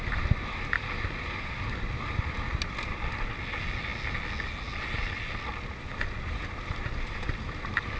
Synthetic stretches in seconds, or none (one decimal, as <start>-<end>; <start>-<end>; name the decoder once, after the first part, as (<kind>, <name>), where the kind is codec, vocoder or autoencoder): none